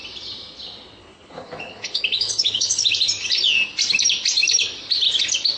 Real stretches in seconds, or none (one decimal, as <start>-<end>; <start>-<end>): 0.0-1.0; 2.9-5.6